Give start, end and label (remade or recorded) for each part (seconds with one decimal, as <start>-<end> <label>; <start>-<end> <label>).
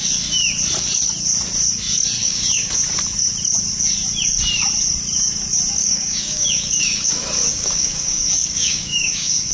0.0-2.2 recorded; 2.2-2.7 remade; 2.7-5.8 recorded; 5.8-7.1 remade; 7.1-7.5 recorded; 7.5-9.5 remade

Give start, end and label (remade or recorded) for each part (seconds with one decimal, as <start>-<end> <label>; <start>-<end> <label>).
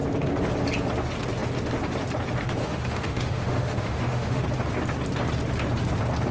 0.0-2.6 recorded; 2.6-4.4 remade; 4.4-6.3 recorded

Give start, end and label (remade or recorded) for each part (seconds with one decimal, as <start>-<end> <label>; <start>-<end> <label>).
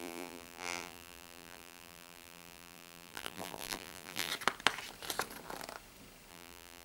0.0-4.3 remade; 4.3-6.3 recorded; 6.3-6.8 remade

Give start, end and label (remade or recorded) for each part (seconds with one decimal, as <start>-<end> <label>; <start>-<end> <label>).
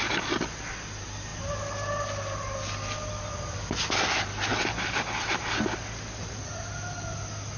0.0-7.6 recorded